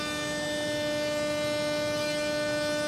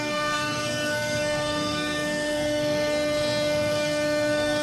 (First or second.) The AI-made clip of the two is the second